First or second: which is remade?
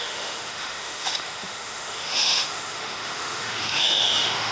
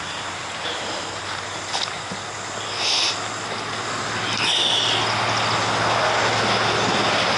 first